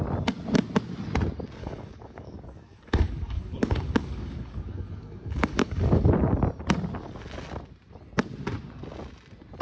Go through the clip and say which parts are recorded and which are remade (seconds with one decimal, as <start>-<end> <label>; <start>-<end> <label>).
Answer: 0.0-1.6 recorded; 1.6-6.1 remade; 6.1-9.6 recorded